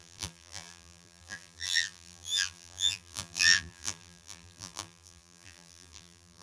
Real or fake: fake